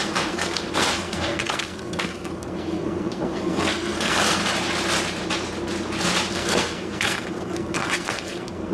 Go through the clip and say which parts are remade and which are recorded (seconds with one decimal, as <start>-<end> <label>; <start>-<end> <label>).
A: 0.0-4.4 remade; 4.4-6.3 recorded; 6.3-8.7 remade